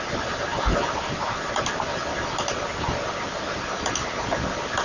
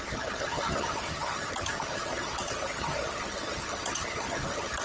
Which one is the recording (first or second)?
first